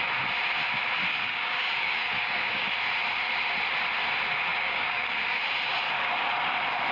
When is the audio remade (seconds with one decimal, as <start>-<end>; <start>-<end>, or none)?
1.1-2.7; 4.5-5.4